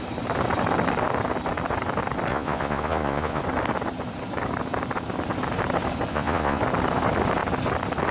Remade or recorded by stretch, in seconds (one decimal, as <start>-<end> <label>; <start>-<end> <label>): 0.0-2.3 recorded; 2.3-3.4 remade; 3.4-6.1 recorded; 6.1-6.6 remade; 6.6-8.1 recorded